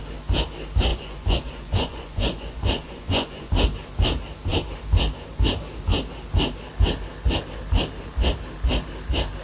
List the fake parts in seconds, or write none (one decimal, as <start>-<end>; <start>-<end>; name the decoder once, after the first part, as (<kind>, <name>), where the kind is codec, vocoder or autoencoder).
0.9-3.5 (vocoder, Vocos)